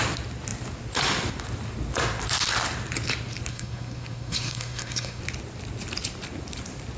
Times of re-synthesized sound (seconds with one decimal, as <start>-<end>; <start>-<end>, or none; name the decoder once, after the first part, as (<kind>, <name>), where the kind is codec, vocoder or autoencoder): 3.5-5.2 (codec, SNAC)

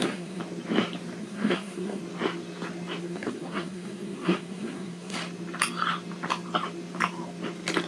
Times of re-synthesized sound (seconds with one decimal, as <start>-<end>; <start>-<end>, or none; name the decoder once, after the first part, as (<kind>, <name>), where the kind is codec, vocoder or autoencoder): 0.0-0.4 (codec, SNAC); 1.2-2.0; 3.0-5.2

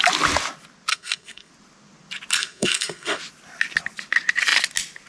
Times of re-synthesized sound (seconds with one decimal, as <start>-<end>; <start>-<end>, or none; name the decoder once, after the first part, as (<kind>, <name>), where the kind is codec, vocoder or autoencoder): 0.9-1.5 (codec, SNAC); 2.4-3.2

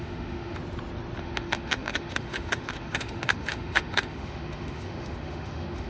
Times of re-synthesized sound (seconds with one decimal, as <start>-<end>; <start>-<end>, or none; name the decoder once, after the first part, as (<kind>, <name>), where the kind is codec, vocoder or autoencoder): 0.0-0.6 (autoencoder, DAC-VAE); 1.2-5.9

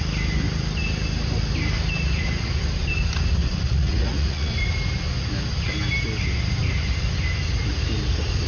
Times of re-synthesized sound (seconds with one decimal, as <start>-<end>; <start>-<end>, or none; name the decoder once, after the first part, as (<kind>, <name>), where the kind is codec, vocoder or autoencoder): 3.4-4.5 (vocoder, Vocos)

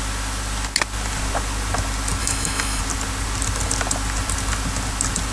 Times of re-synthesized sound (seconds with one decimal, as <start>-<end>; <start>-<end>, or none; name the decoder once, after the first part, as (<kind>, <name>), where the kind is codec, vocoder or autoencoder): 2.2-2.8 (autoencoder, DAC-VAE)